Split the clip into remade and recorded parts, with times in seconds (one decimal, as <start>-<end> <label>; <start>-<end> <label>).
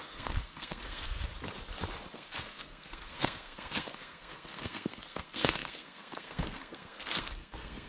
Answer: 0.0-1.3 remade; 1.3-2.1 recorded; 2.1-7.9 remade